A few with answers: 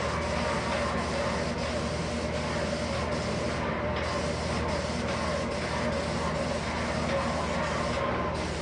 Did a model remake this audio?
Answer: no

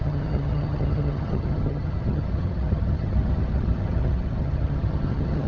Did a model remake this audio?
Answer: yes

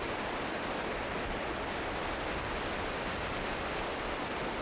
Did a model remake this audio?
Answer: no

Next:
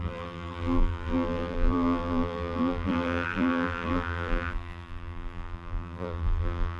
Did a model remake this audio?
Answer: yes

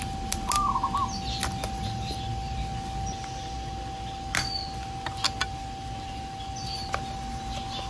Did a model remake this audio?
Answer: no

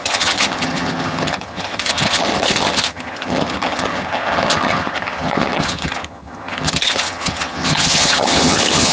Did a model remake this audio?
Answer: yes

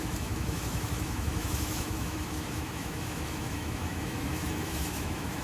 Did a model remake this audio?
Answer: yes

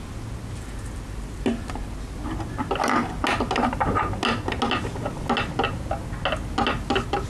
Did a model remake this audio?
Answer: no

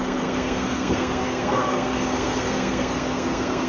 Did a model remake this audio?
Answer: yes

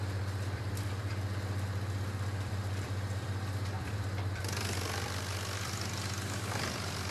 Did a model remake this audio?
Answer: yes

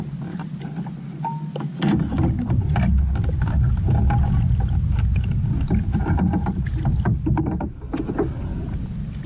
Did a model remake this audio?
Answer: no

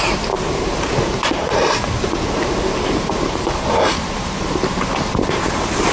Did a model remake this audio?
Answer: yes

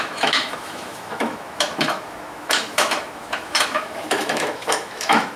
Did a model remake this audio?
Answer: yes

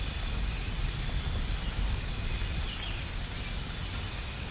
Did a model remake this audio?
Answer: no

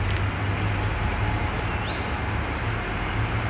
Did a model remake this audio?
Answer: no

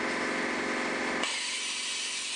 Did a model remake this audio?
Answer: no